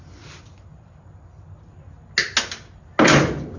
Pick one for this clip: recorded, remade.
recorded